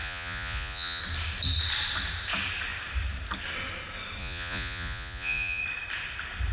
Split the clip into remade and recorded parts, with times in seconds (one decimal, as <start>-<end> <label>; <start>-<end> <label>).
0.0-1.0 remade; 1.0-4.2 recorded; 4.2-5.6 remade; 5.6-6.5 recorded

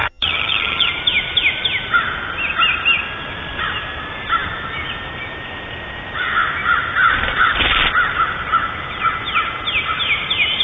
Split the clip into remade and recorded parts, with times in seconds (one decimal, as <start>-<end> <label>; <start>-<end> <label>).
0.0-0.9 remade; 0.9-10.6 recorded

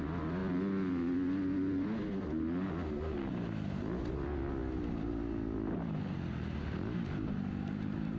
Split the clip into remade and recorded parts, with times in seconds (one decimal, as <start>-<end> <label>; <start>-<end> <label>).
0.0-8.2 recorded

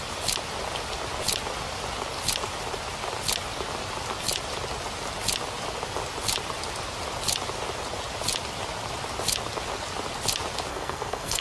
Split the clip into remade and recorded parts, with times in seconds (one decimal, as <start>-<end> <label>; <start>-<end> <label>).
0.0-10.7 recorded; 10.7-11.4 remade

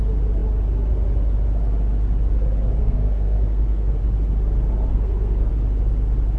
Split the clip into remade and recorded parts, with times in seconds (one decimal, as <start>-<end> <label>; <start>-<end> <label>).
0.0-2.8 recorded; 2.8-4.0 remade; 4.0-4.9 recorded; 4.9-5.5 remade; 5.5-6.4 recorded

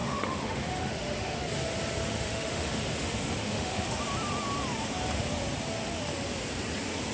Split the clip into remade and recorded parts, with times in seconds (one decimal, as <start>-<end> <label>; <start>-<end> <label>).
0.0-1.4 remade; 1.4-2.0 recorded; 2.0-4.0 remade; 4.0-7.1 recorded